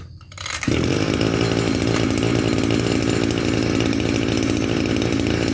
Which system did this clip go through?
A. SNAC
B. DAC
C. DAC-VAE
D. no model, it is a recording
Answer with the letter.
D